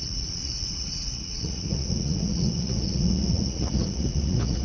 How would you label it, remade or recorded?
remade